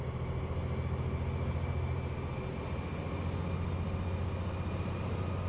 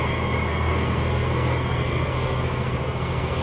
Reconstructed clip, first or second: second